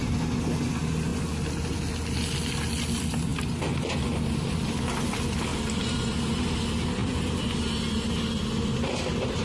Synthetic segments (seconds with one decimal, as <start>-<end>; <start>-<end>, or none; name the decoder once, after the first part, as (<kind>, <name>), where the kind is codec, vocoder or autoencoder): 3.3-4.7 (vocoder, BigVGAN v2); 5.5-6.3